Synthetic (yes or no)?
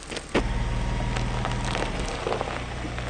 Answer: no